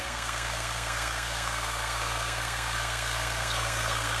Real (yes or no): no